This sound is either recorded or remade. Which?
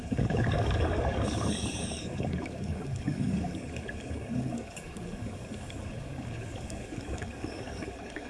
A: remade